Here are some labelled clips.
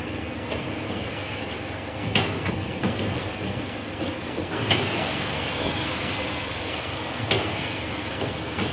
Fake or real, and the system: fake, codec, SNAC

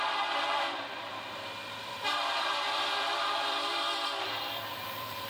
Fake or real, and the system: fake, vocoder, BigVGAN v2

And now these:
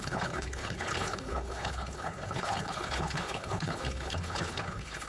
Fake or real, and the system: fake, codec, HILCodec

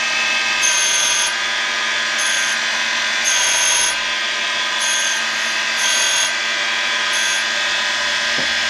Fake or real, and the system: real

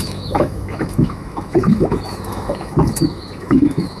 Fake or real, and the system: fake, autoencoder, DAC-VAE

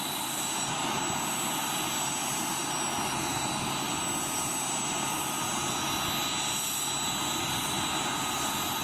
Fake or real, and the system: real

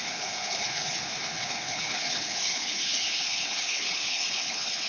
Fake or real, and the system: fake, codec, HILCodec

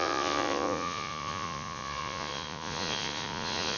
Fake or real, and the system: fake, vocoder, Vocos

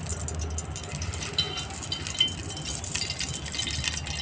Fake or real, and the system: real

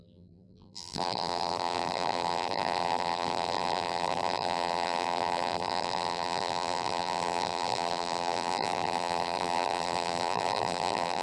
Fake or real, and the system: fake, vocoder, BigVGAN v2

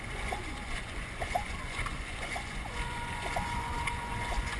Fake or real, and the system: fake, vocoder, Vocos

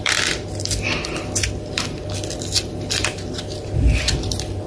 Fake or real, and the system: fake, vocoder, BigVGAN v2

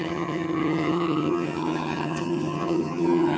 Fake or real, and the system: fake, vocoder, HiFi-GAN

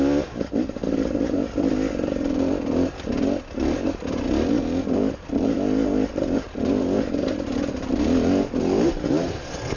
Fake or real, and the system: real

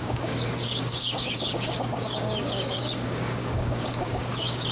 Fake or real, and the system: fake, codec, DAC